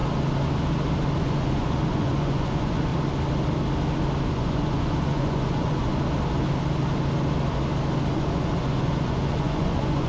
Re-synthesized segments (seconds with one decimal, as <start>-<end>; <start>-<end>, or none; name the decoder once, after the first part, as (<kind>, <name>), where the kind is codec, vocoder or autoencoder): 1.2-2.9 (vocoder, Vocos); 4.3-5.9; 8.1-10.1